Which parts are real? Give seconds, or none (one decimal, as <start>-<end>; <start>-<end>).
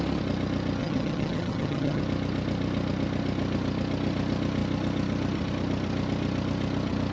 0.0-0.8; 2.0-7.1